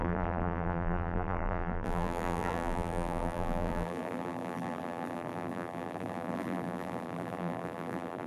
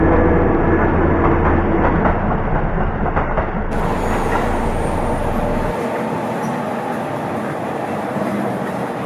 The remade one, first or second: first